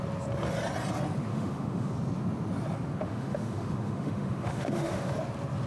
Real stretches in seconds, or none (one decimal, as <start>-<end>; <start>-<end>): 0.0-1.3; 1.9-3.0; 5.1-5.7